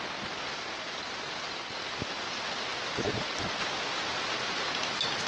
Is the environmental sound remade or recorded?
recorded